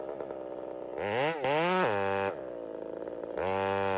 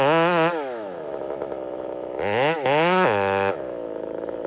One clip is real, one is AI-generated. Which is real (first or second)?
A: first